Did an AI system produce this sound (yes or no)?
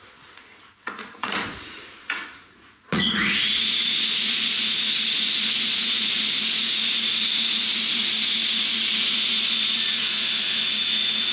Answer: yes